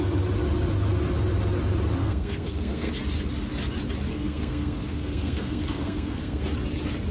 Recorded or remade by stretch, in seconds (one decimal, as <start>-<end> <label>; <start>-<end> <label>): 0.0-2.0 recorded; 2.0-2.9 remade; 2.9-4.1 recorded; 4.1-6.4 remade; 6.4-7.1 recorded